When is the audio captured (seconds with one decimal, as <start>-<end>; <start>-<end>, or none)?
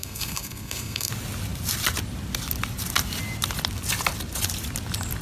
1.1-5.2